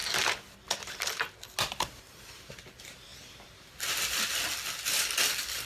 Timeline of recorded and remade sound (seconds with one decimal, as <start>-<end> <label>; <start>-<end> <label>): 0.0-5.7 recorded